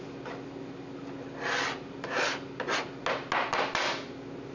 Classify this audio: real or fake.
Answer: real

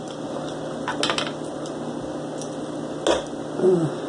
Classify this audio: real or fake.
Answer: real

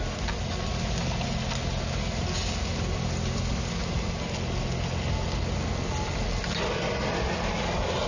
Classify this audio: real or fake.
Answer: real